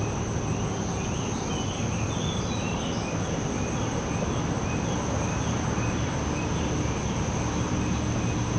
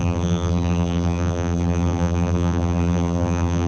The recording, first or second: first